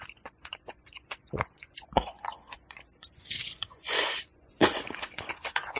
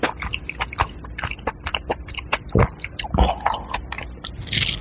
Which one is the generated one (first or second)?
first